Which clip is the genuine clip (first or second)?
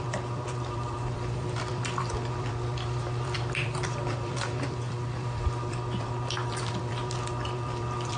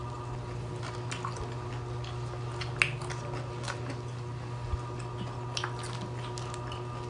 second